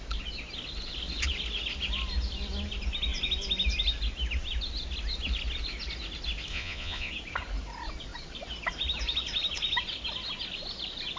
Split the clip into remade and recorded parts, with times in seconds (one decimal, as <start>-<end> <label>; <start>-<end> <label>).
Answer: 0.0-6.5 recorded; 6.5-7.1 remade; 7.1-11.2 recorded